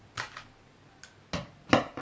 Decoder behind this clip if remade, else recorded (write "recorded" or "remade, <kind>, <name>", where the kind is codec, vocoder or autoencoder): recorded